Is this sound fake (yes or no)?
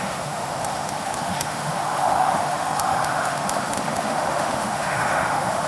yes